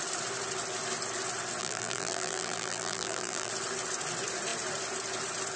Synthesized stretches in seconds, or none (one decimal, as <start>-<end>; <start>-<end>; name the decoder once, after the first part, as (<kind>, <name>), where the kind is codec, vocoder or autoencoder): 1.6-3.5 (vocoder, BigVGAN v2)